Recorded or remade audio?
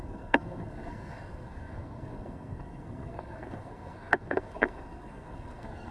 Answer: remade